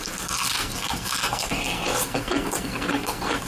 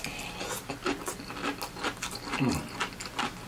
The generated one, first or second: first